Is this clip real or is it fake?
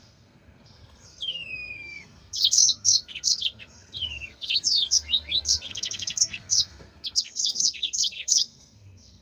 fake